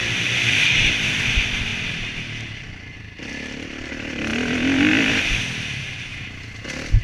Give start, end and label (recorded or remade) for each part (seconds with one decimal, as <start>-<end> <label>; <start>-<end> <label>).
0.0-4.3 remade; 4.3-4.9 recorded; 4.9-6.1 remade; 6.1-7.0 recorded